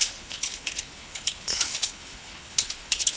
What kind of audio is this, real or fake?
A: fake